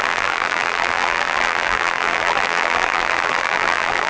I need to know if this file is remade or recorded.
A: remade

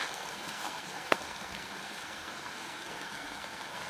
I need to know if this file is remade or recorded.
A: remade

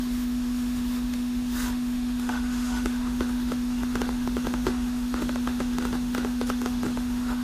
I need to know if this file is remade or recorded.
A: remade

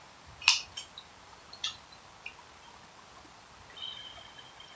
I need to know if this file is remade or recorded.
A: recorded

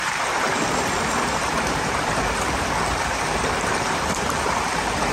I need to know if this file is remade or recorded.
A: remade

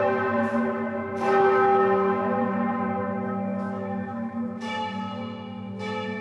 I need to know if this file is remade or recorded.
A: remade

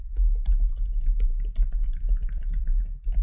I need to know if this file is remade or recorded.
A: remade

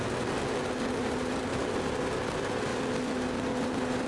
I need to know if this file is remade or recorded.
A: recorded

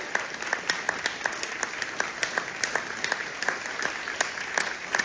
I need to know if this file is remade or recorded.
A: recorded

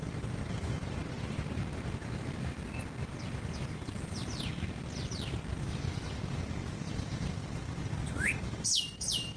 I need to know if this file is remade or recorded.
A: remade